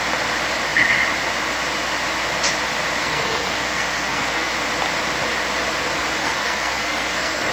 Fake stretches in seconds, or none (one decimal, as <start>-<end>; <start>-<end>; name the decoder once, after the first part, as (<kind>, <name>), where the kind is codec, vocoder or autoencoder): 3.0-4.5 (codec, SNAC); 6.2-7.5